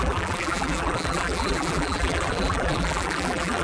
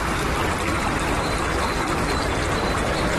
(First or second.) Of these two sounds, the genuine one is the second